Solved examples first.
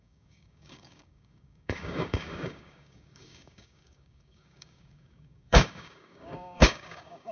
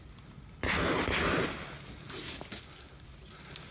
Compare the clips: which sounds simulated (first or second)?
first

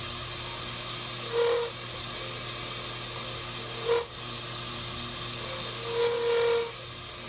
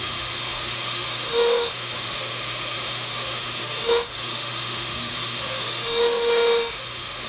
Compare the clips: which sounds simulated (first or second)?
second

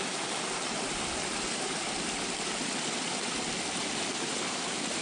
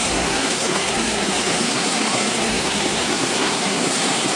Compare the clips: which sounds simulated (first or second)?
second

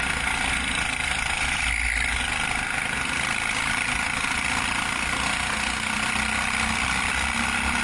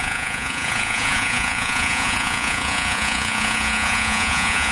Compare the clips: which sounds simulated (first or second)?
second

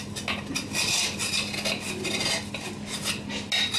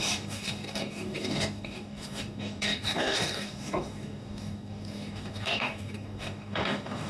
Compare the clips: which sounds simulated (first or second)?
second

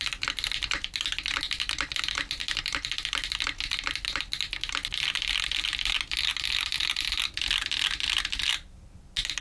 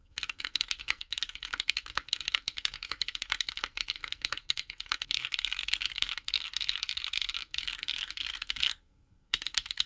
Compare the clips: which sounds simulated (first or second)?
second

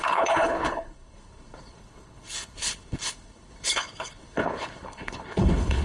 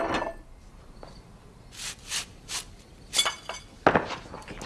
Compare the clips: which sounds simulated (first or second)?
first